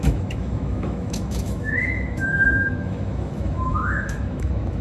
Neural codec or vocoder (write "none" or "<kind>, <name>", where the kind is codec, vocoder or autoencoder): autoencoder, DAC-VAE